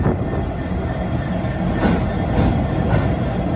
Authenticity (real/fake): real